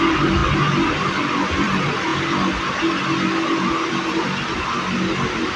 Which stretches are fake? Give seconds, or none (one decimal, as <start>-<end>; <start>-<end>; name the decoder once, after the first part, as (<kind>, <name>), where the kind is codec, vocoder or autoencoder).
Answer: 0.0-0.4 (vocoder, BigVGAN v2); 0.9-2.1